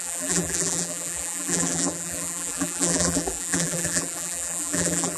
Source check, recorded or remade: remade